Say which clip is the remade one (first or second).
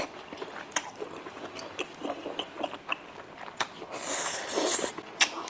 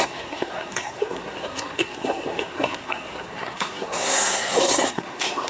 second